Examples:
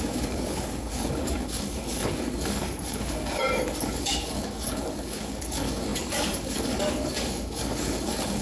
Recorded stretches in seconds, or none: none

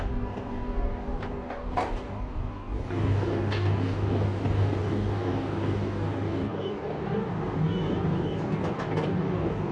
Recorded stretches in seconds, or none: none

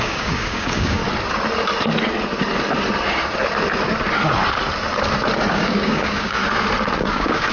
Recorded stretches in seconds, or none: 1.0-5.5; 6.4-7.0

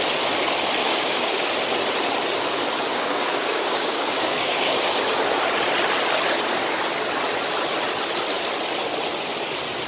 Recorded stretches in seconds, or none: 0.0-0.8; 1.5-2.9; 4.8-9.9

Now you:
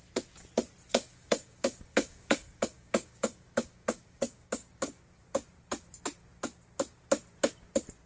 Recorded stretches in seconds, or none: 0.0-0.9; 5.0-8.1